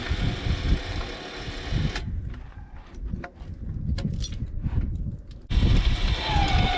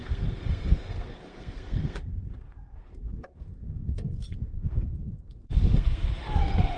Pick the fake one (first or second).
second